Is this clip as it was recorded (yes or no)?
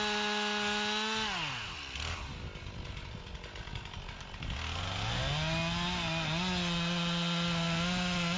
yes